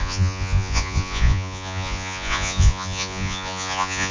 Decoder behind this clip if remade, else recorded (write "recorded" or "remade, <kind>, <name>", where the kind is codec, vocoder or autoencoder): remade, vocoder, Vocos